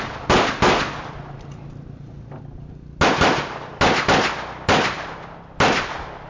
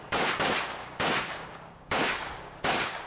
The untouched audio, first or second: first